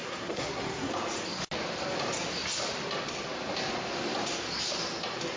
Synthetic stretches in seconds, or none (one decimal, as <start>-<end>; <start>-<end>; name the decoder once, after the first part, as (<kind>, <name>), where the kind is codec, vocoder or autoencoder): 0.0-0.9 (codec, SNAC)